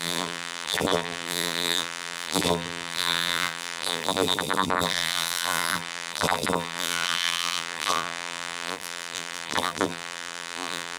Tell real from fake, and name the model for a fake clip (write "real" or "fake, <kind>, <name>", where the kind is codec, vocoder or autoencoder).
fake, vocoder, BigVGAN v2